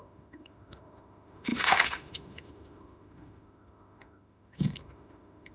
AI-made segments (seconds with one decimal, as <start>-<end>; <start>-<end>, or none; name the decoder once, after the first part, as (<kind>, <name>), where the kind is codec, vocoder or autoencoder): 0.0-5.5 (autoencoder, DAC-VAE)